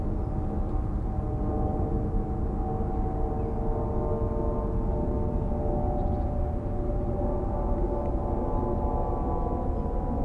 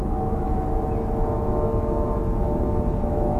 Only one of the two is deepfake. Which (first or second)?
second